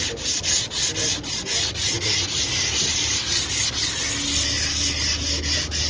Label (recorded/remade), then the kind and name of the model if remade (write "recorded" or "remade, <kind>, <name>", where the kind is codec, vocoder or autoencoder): recorded